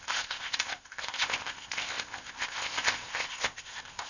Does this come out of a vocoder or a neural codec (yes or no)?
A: yes